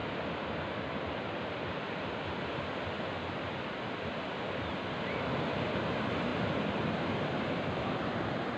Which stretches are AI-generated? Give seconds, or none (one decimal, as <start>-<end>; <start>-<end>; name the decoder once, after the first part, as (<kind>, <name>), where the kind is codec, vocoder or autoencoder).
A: 0.0-3.1 (vocoder, BigVGAN v2); 6.3-8.6